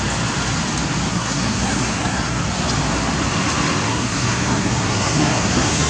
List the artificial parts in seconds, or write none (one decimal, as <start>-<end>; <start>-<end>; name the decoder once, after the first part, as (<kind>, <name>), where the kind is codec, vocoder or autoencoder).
1.1-2.4 (codec, SNAC); 3.9-5.9

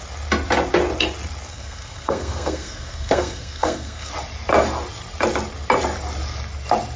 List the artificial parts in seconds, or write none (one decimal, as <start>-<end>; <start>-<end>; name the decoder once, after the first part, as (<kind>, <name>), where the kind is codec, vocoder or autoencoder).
1.5-4.1 (codec, SNAC)